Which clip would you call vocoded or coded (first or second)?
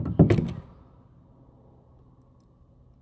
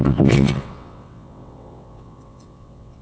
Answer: second